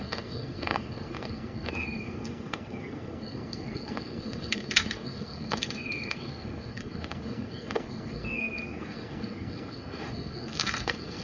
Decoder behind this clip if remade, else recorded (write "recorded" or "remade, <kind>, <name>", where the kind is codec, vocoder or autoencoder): remade, codec, SNAC